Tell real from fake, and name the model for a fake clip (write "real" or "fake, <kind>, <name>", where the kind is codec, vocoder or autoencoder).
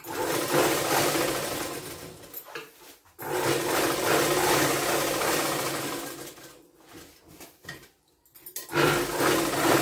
real